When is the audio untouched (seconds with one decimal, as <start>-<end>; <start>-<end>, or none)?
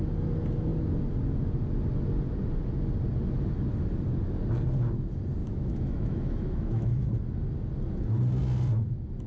0.0-5.4; 7.1-9.3